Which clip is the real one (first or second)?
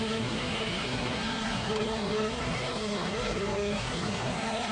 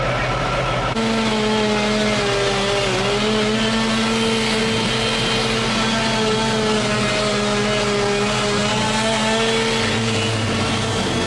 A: second